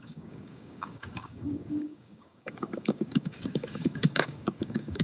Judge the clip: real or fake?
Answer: fake